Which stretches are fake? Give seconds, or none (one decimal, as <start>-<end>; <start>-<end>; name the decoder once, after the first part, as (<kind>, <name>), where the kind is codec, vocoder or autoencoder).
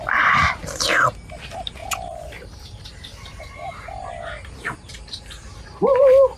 0.4-1.0 (vocoder, BigVGAN v2); 1.8-3.4; 4.9-6.4